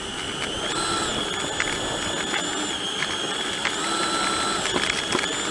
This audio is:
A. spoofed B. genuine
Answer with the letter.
B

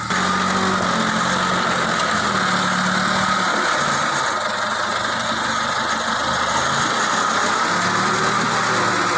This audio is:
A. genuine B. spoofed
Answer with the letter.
A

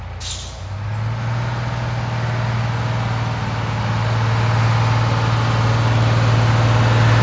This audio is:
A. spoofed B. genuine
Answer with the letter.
B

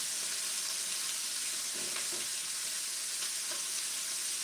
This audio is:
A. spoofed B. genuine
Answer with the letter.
B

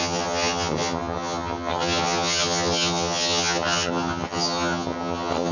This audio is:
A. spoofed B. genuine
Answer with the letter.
A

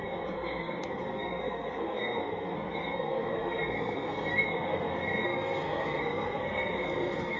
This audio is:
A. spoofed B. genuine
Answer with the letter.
A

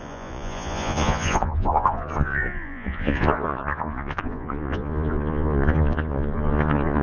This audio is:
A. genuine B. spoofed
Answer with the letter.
B